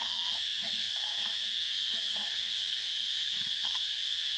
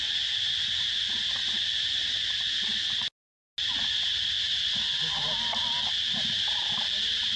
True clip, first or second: second